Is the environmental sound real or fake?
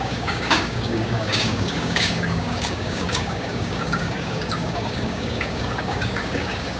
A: fake